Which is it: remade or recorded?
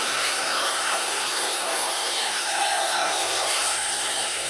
remade